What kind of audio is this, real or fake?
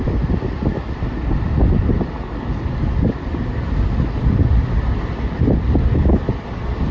fake